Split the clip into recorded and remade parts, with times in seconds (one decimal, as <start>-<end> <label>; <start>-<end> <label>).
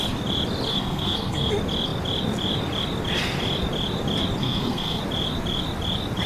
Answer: 0.0-0.7 recorded; 0.7-1.5 remade; 1.5-4.4 recorded; 4.4-5.0 remade; 5.0-6.3 recorded